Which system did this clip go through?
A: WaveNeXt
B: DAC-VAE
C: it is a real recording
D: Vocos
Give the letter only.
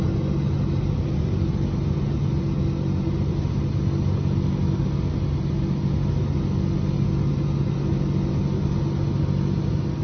C